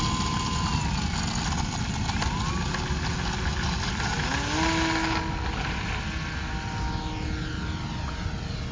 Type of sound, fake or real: real